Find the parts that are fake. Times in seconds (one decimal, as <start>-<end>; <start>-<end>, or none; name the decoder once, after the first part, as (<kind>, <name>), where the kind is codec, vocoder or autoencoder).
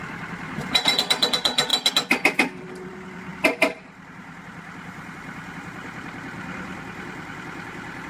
0.0-1.7 (vocoder, BigVGAN v2); 2.6-8.1